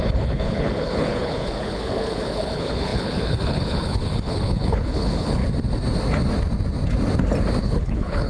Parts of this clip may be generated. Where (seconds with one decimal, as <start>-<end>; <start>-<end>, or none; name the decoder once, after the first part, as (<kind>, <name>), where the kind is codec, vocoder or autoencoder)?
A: 0.0-5.4 (codec, HILCodec); 7.6-8.3

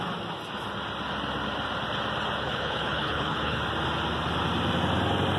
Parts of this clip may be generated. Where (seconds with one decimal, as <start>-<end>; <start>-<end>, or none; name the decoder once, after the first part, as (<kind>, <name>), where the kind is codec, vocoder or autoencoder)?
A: 2.4-3.6 (codec, HILCodec)

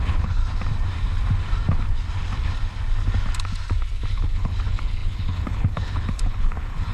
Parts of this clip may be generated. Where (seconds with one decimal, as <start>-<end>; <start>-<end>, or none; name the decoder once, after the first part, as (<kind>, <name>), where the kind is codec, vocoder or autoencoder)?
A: 0.0-0.4 (codec, HILCodec); 4.1-6.9